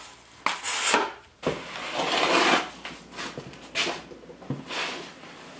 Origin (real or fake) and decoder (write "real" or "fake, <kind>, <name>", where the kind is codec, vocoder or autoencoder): real